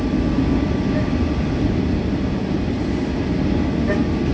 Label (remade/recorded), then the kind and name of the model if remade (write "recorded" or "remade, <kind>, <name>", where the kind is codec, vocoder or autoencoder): recorded